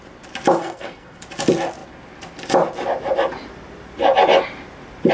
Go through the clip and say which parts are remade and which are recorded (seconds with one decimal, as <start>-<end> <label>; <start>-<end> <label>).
0.0-0.6 recorded; 0.6-1.2 remade; 1.2-5.1 recorded